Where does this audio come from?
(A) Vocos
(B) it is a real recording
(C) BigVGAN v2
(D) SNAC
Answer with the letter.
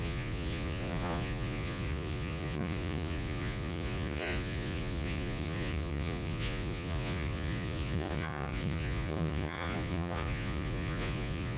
A